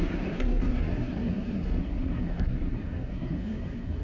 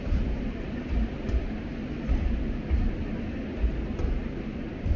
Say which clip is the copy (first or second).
first